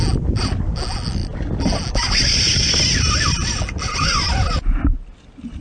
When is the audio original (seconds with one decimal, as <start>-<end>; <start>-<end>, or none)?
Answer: 0.0-5.6